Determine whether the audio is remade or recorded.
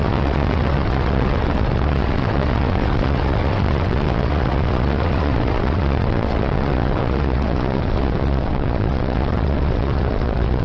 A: remade